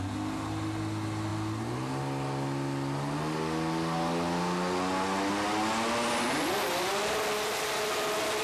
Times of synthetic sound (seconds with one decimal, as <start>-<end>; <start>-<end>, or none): none